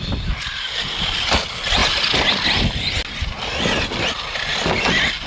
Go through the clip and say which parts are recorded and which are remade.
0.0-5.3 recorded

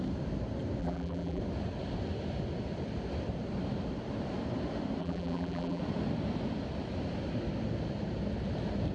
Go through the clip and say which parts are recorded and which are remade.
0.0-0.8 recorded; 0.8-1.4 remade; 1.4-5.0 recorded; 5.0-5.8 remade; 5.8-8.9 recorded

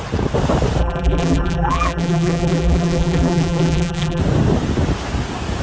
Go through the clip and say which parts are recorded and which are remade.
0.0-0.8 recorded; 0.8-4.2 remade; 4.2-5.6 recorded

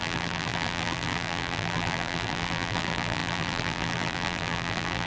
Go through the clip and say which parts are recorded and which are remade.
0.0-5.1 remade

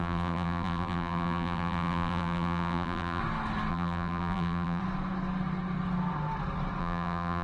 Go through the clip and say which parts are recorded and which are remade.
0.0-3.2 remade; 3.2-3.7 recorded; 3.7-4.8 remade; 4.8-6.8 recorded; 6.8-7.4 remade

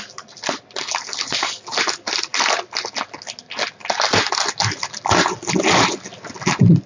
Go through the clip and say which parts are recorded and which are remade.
0.0-6.9 recorded